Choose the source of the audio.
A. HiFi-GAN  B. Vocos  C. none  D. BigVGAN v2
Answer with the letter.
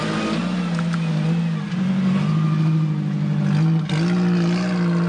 C